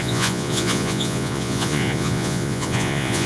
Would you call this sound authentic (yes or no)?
no